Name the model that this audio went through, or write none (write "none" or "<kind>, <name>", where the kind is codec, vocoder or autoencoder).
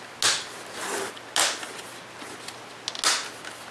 none